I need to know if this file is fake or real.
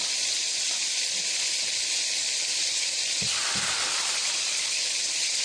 real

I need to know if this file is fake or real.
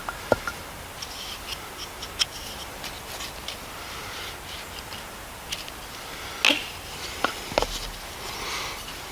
real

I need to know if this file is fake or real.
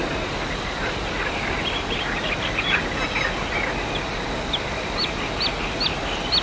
real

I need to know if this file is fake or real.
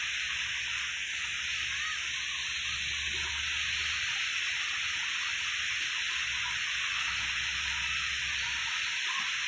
real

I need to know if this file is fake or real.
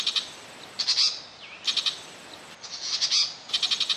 real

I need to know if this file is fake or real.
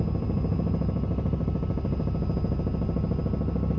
real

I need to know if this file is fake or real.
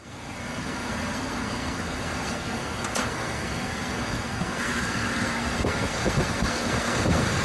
fake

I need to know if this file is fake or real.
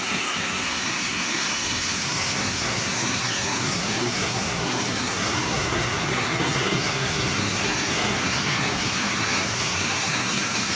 fake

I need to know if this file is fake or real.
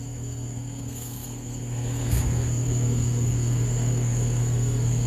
fake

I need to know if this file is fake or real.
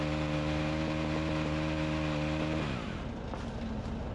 real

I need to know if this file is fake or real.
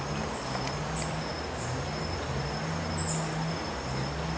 real